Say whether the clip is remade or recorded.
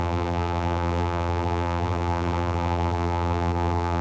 remade